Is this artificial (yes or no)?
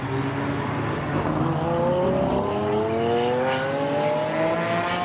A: no